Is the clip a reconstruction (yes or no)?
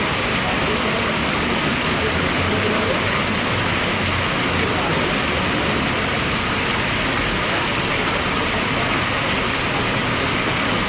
no